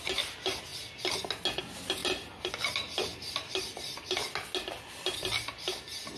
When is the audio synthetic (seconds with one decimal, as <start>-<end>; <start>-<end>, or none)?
2.0-2.5

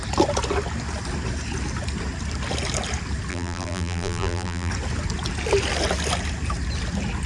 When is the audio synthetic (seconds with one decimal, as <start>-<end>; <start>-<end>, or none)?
3.3-4.7

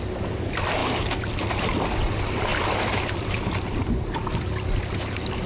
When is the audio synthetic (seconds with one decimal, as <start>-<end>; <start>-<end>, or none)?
2.5-5.5